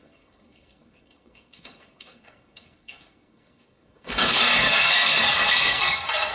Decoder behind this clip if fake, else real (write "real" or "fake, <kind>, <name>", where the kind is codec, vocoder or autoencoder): fake, codec, SNAC